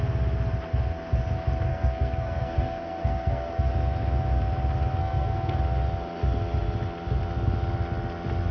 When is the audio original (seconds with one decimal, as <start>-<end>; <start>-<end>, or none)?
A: 0.0-1.7; 3.7-5.0; 5.6-8.5